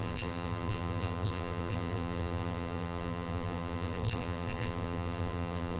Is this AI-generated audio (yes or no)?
yes